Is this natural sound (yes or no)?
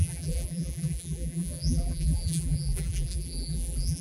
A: no